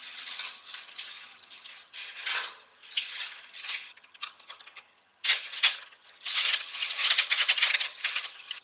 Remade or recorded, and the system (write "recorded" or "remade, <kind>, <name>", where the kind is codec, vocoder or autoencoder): remade, vocoder, HiFi-GAN